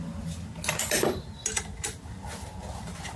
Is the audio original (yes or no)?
yes